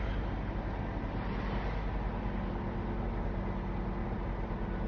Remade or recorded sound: recorded